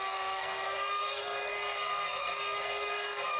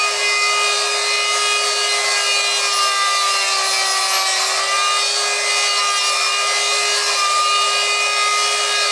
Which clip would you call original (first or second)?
second